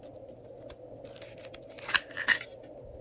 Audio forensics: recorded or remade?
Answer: recorded